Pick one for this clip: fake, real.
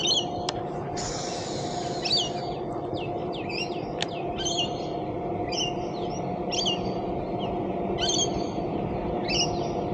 real